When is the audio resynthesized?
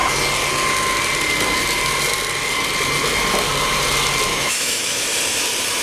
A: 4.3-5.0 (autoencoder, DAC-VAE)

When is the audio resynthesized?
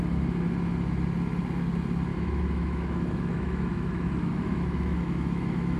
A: 2.1-5.8 (autoencoder, DAC-VAE)